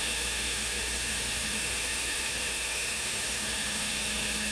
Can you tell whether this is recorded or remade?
remade